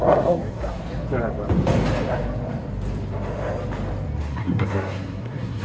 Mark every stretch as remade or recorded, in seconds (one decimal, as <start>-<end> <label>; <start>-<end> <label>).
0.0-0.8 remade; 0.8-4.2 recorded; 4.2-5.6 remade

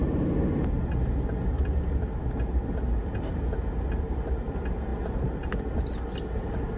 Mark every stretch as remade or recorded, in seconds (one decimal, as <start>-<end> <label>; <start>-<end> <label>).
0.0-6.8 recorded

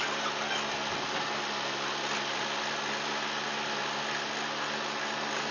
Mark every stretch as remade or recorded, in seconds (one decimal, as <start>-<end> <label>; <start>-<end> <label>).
0.0-5.5 recorded

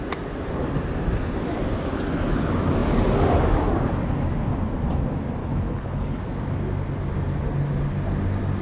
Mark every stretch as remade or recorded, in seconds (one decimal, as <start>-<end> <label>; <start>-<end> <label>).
0.0-5.4 recorded; 5.4-6.2 remade; 6.2-8.6 recorded